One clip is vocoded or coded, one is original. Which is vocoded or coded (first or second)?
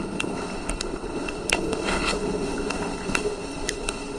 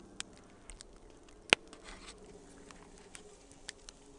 first